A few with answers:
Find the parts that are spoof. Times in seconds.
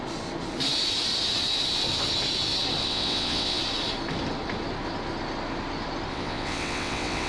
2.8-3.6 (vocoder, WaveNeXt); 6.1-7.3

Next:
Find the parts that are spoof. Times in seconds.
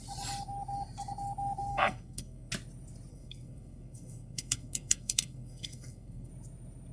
1.7-2.5 (codec, SNAC); 3.1-6.3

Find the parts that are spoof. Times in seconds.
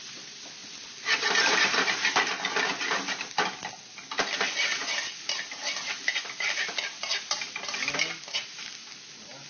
none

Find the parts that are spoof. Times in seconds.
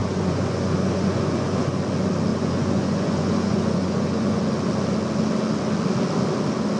0.0-1.8 (vocoder, Vocos); 2.3-4.4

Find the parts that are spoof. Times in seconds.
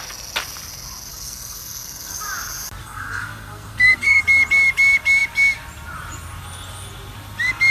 1.1-2.2 (codec, SNAC); 2.8-4.2